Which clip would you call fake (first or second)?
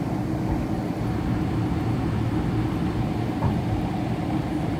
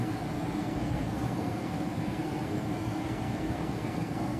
second